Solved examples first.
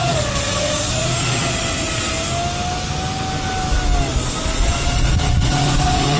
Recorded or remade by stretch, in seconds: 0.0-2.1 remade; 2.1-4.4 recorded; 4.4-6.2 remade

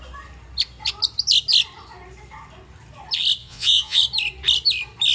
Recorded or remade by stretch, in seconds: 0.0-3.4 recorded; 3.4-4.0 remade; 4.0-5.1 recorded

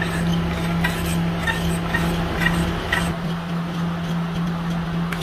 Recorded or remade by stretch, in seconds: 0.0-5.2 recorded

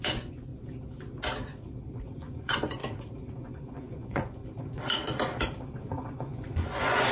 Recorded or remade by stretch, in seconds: 0.0-0.5 remade; 0.5-2.2 recorded; 2.2-2.8 remade; 2.8-3.4 recorded; 3.4-4.4 remade; 4.4-5.8 recorded; 5.8-7.1 remade